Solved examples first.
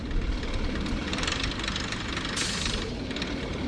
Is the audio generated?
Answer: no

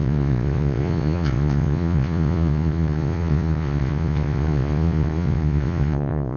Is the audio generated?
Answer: yes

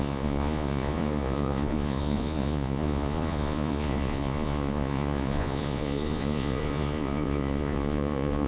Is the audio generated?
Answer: yes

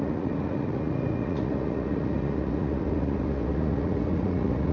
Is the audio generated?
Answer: yes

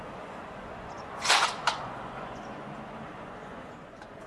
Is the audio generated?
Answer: yes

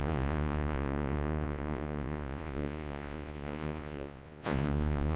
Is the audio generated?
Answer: yes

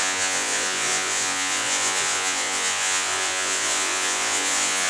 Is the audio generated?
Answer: yes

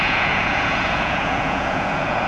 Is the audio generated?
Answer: yes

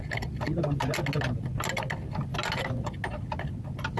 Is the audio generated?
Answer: no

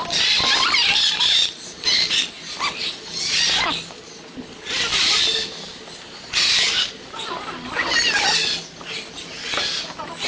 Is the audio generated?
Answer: no